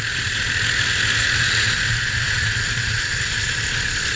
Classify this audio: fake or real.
real